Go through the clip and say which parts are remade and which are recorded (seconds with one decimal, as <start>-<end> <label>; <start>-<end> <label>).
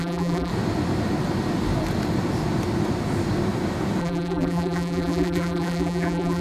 0.0-0.5 remade; 0.5-4.0 recorded; 4.0-6.4 remade